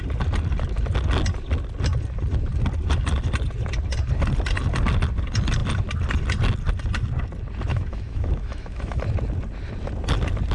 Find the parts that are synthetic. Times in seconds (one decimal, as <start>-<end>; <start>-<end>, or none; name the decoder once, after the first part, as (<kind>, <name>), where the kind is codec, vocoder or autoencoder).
7.7-9.0 (autoencoder, DAC-VAE)